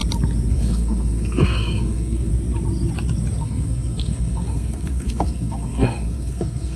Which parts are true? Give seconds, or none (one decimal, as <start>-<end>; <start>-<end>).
0.0-0.5; 2.3-3.4